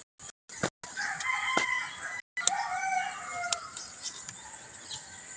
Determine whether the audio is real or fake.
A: real